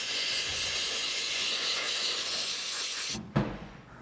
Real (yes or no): no